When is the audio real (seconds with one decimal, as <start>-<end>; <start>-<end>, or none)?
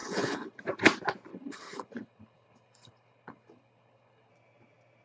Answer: 0.6-1.3; 4.3-5.0